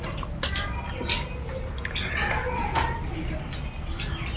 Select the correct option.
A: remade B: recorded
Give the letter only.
B